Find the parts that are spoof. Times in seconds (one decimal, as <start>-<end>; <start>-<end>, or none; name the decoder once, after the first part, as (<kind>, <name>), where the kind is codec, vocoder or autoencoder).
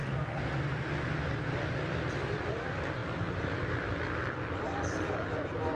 none